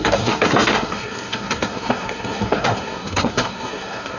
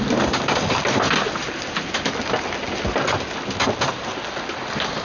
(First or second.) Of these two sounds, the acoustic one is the second